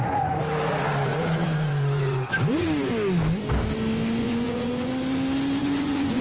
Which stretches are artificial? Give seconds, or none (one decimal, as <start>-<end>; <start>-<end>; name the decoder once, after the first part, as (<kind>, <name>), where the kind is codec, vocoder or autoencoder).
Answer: 1.1-2.9 (vocoder, Vocos); 4.2-4.9; 5.6-6.2